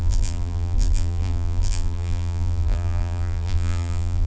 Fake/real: fake